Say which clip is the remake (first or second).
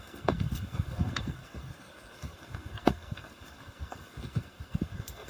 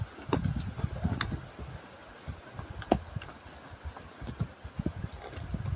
first